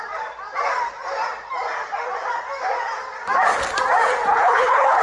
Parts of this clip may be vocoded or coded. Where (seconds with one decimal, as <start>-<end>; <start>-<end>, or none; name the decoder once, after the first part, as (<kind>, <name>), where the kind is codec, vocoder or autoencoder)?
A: 4.3-5.0 (codec, HILCodec)